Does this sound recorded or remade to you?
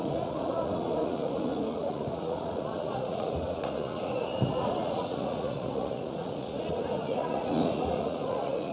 remade